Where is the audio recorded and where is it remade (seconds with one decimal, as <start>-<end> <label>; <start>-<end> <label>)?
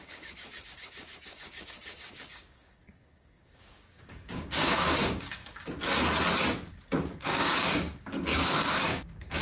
0.0-5.4 remade; 5.4-7.2 recorded; 7.2-9.4 remade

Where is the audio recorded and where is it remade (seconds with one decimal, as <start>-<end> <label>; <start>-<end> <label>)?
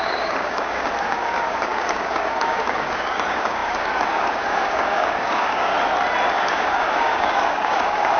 0.0-5.7 remade; 5.7-6.3 recorded; 6.3-8.2 remade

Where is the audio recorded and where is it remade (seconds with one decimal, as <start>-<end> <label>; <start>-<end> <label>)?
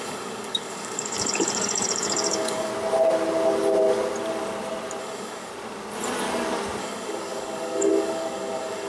0.0-2.7 remade; 2.7-5.0 recorded; 5.0-5.5 remade; 5.5-6.8 recorded; 6.8-8.9 remade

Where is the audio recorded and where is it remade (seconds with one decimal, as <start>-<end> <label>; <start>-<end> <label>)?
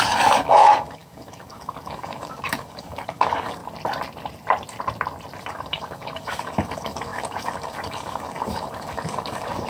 0.0-3.6 remade; 3.6-5.5 recorded; 5.5-9.7 remade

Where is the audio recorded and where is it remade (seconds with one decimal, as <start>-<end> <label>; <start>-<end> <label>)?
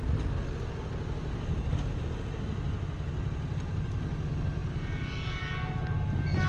0.0-6.5 recorded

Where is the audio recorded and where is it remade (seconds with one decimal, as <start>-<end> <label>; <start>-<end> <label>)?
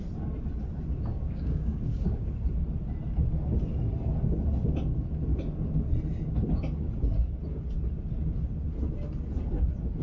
0.0-1.1 recorded; 1.1-2.3 remade; 2.3-10.0 recorded